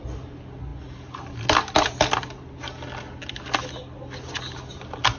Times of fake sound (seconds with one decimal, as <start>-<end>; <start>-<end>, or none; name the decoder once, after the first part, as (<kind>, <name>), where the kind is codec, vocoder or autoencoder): none